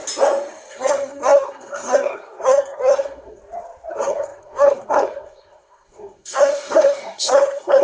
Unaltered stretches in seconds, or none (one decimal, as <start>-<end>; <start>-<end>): 0.0-0.7; 3.4-3.9

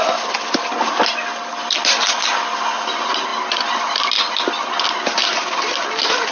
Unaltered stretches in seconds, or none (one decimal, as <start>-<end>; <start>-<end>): 0.0-6.3

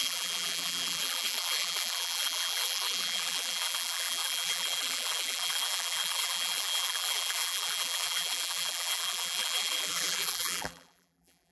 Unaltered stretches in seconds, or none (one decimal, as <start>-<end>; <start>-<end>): none

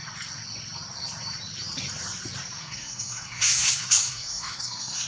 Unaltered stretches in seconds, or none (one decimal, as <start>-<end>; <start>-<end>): 0.0-2.6

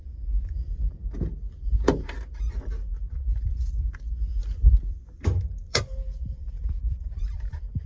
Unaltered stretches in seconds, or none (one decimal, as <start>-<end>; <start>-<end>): 1.0-5.7

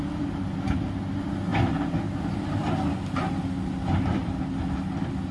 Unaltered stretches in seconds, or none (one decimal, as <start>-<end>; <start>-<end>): 0.0-5.3

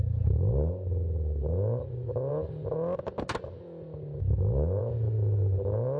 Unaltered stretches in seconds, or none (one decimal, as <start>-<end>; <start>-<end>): 0.0-6.0

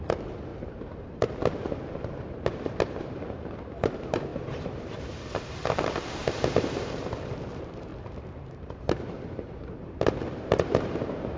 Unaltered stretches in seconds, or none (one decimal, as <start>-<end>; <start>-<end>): 7.9-8.4